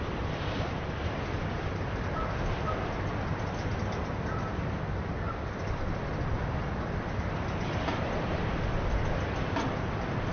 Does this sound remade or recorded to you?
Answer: recorded